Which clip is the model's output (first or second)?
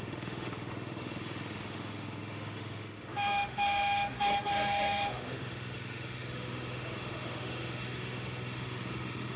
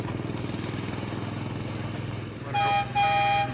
first